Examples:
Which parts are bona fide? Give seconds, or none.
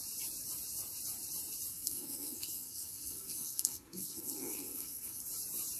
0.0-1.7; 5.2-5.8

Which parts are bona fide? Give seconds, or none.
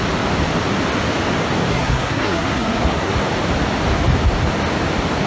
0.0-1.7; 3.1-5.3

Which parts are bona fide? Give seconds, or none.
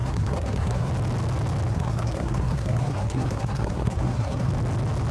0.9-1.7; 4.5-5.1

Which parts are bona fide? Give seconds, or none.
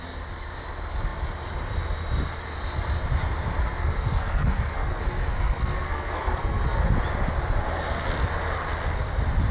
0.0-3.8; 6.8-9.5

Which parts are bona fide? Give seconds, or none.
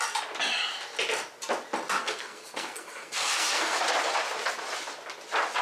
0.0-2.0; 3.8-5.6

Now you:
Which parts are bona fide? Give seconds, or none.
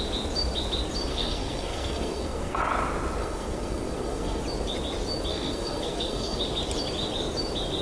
0.0-1.1; 2.6-3.2; 4.4-5.3; 6.4-7.8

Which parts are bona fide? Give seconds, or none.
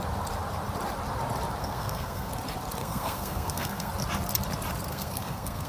0.0-1.6; 2.3-2.8; 3.9-4.9